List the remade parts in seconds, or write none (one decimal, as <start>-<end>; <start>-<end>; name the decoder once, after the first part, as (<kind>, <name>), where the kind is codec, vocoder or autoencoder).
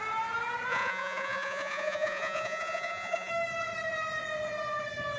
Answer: 0.7-3.3 (vocoder, Vocos)